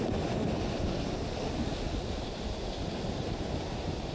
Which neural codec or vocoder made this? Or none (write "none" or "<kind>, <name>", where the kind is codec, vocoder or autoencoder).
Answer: none